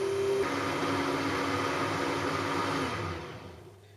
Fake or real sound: real